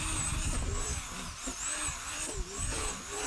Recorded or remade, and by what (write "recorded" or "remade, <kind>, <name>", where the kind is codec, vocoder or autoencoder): remade, vocoder, BigVGAN v2